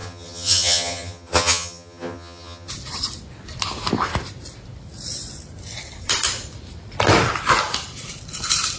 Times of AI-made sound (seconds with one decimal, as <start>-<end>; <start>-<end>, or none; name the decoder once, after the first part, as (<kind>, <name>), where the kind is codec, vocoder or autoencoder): 0.0-2.7 (vocoder, HiFi-GAN)